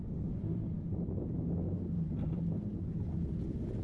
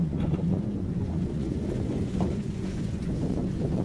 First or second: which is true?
first